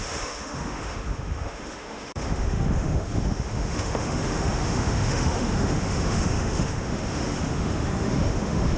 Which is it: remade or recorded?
remade